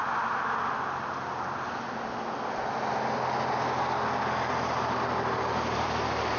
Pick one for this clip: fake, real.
real